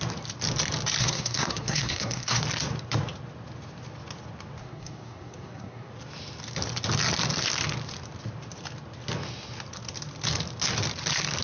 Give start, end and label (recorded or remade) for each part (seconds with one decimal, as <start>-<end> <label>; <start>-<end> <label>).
0.0-1.0 recorded; 1.0-2.4 remade; 2.4-4.6 recorded; 4.6-5.9 remade; 5.9-11.4 recorded